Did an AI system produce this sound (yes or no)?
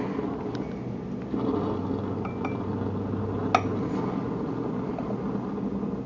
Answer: no